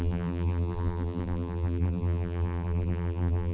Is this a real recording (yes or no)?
no